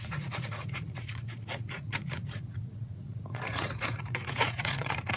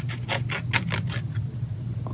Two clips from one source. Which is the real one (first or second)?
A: second